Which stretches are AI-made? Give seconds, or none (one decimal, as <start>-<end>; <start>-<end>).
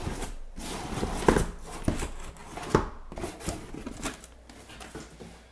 none